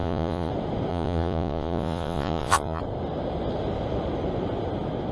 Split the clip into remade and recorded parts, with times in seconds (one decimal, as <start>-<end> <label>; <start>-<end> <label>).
0.0-0.5 remade; 0.5-0.9 recorded; 0.9-2.8 remade; 2.8-5.1 recorded